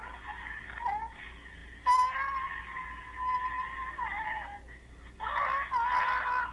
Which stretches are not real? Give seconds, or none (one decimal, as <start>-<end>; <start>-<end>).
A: none